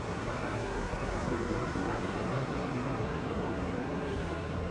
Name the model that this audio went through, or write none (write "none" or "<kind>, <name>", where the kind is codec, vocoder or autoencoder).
codec, SNAC